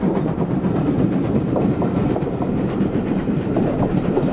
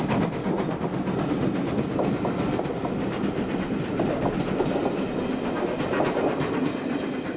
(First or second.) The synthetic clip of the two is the first